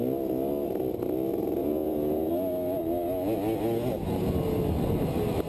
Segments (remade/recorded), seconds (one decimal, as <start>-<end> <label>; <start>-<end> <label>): 0.0-1.6 recorded; 1.6-2.3 remade; 2.3-5.5 recorded